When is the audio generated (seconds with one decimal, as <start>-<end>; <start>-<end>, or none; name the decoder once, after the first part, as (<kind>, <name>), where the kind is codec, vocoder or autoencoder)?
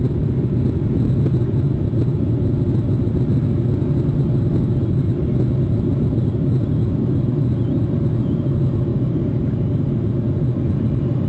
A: 8.9-9.9 (vocoder, BigVGAN v2)